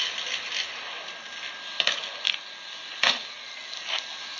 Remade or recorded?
recorded